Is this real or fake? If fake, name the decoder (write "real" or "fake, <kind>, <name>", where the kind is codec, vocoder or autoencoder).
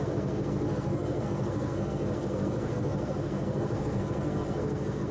fake, codec, SNAC